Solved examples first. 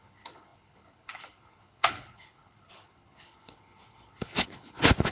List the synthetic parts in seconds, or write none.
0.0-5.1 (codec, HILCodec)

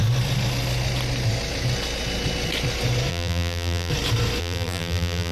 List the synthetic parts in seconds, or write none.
3.1-3.9 (vocoder, BigVGAN v2); 4.4-5.3

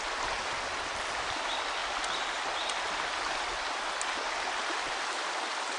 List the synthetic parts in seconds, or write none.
none

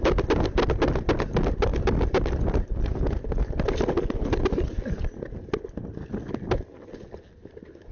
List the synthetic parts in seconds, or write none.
none

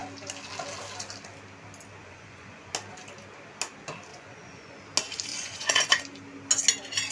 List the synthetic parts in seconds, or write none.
2.0-2.7 (vocoder, Vocos); 4.1-4.8; 5.3-6.0